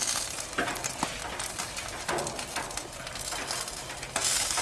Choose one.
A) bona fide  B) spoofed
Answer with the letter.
A